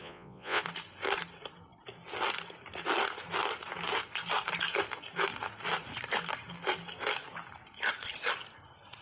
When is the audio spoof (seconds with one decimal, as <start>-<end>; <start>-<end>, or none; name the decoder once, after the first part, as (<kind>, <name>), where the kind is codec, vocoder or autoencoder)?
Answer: 0.0-0.6 (vocoder, Vocos)